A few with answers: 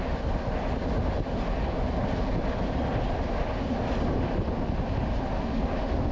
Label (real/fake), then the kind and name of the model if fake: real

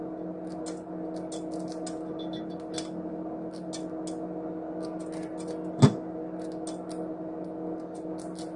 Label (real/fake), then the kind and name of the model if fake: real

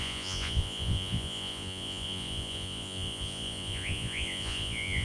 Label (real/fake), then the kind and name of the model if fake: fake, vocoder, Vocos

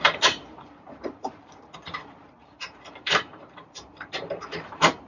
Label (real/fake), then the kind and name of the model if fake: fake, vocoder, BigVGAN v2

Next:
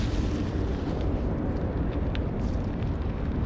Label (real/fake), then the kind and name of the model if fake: real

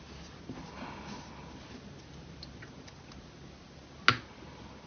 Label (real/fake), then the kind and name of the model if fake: real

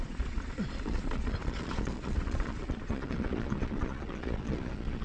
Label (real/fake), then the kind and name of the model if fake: fake, vocoder, Vocos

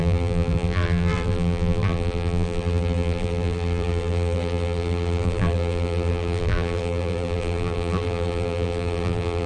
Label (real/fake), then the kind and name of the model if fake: fake, vocoder, BigVGAN v2